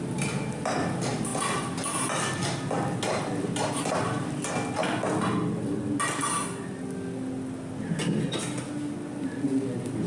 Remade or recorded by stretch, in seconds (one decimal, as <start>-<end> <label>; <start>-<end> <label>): 0.0-10.1 recorded